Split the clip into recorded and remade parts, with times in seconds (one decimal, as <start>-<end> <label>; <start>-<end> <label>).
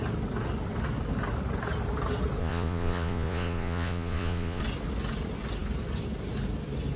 0.0-2.4 recorded; 2.4-4.6 remade; 4.6-7.0 recorded